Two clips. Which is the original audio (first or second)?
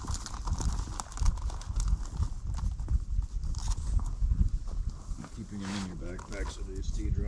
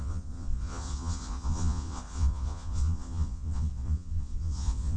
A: first